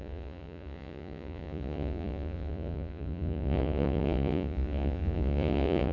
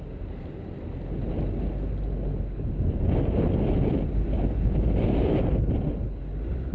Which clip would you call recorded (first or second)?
second